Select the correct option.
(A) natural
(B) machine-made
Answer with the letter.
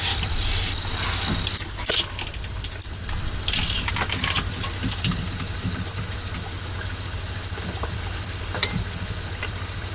A